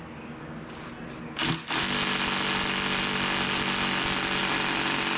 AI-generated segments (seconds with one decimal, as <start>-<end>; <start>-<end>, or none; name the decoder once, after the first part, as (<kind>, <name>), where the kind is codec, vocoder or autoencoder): none